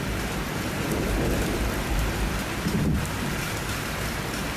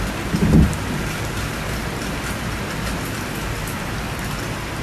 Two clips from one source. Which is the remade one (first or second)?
first